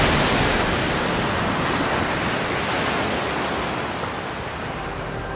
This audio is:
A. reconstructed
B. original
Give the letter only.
B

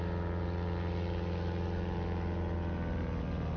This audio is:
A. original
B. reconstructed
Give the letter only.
A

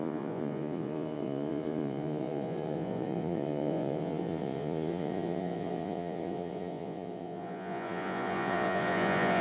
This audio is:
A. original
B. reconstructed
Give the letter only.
B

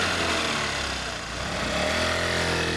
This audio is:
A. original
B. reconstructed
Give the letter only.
A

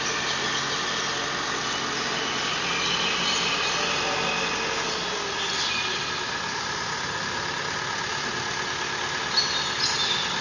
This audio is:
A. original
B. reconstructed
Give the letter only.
A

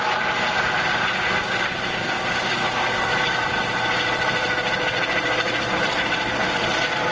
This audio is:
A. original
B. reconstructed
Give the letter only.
A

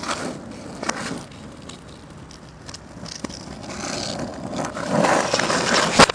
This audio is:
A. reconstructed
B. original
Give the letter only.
B